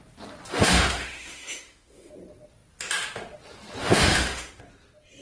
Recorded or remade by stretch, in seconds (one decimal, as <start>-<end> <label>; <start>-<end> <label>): 0.0-0.5 recorded; 0.5-2.1 remade; 2.1-3.8 recorded; 3.8-4.6 remade; 4.6-5.2 recorded